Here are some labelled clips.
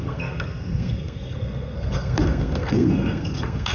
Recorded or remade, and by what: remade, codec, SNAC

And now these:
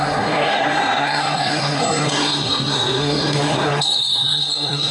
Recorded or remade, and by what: remade, codec, SNAC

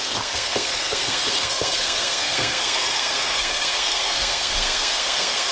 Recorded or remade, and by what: remade, codec, SNAC